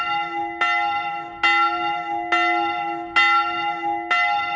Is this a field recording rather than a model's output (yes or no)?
yes